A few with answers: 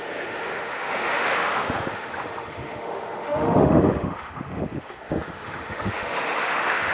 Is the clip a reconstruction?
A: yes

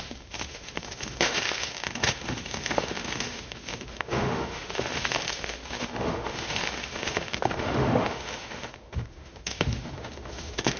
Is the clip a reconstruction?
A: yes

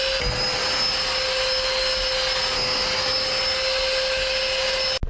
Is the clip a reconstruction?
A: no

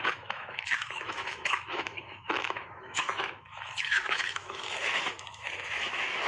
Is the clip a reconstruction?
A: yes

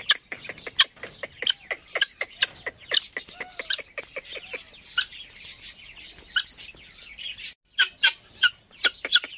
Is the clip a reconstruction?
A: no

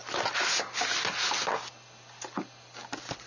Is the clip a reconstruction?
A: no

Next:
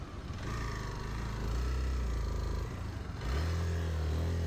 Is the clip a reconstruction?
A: no